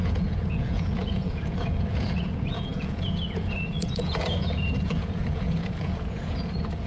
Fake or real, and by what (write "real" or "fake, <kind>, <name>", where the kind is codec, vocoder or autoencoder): fake, vocoder, Vocos